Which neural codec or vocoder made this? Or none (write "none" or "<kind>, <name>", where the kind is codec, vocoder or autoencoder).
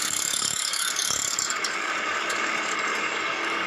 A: codec, DAC